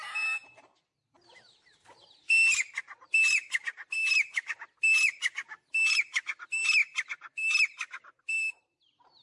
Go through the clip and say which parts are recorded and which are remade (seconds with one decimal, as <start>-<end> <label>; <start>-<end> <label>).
0.0-9.2 recorded